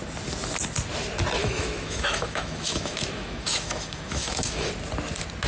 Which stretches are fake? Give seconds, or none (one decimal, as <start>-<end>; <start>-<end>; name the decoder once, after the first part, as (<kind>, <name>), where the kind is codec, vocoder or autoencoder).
1.4-4.7 (autoencoder, DAC-VAE)